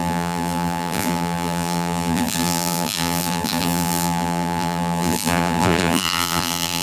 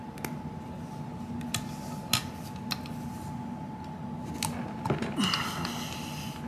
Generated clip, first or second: first